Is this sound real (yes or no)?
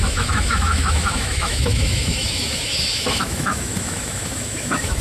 no